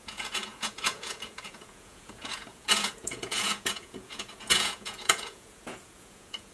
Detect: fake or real fake